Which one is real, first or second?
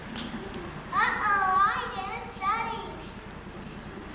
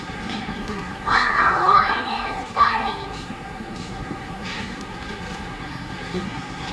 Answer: first